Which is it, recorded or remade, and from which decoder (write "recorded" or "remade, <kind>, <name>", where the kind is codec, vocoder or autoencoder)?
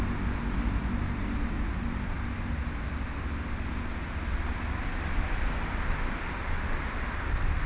recorded